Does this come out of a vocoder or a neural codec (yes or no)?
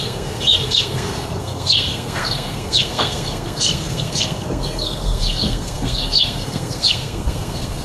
yes